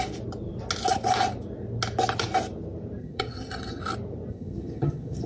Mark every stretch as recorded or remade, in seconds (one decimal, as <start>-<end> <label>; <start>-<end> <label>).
0.0-3.0 recorded; 3.0-3.8 remade; 3.8-4.3 recorded; 4.3-5.3 remade